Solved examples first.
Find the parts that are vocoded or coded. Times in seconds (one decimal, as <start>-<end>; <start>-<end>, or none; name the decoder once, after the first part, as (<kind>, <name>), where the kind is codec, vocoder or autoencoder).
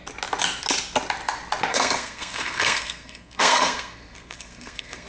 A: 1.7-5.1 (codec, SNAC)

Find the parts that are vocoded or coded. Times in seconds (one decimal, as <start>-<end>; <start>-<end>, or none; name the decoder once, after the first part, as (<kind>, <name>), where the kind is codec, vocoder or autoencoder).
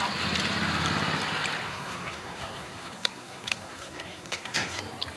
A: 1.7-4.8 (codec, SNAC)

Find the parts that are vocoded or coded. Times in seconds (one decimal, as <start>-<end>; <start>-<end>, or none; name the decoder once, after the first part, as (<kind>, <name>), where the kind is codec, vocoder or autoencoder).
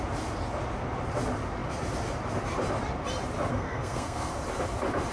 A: 3.5-4.3 (codec, SNAC)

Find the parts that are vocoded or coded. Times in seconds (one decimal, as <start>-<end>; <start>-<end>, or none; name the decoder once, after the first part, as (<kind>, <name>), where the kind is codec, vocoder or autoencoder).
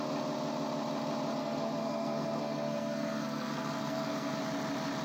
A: 1.4-4.4 (codec, SNAC)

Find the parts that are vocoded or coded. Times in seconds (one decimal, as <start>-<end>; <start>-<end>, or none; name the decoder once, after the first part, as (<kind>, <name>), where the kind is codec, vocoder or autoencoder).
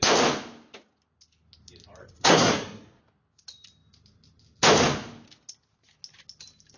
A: 2.0-3.0 (codec, SNAC)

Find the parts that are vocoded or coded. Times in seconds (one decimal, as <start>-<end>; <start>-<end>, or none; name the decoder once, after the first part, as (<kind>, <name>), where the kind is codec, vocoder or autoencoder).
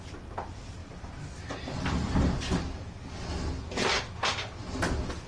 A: none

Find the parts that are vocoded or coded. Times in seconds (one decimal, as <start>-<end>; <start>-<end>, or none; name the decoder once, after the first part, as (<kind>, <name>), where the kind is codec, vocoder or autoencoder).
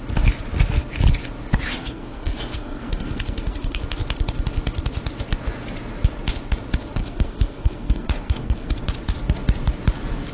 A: 1.8-3.8 (codec, SNAC); 7.0-8.8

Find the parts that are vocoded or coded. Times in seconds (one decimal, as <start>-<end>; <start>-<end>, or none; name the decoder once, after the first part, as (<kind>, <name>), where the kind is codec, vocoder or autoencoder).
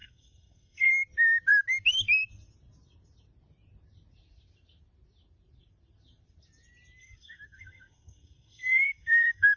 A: 0.0-0.9 (codec, SNAC); 7.0-9.6